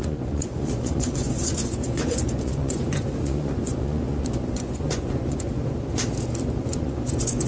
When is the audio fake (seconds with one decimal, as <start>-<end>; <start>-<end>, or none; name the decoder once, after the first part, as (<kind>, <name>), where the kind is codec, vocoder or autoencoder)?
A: 0.0-5.6 (vocoder, Vocos); 6.6-7.5